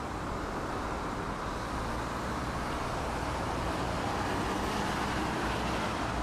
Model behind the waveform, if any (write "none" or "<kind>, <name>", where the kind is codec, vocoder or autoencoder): none